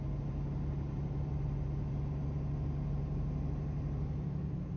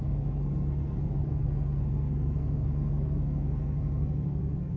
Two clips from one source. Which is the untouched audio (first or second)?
first